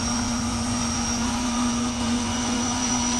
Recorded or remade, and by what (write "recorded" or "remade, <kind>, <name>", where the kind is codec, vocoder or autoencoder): remade, vocoder, Vocos